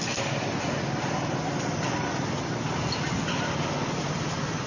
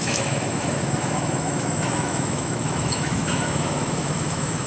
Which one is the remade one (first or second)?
second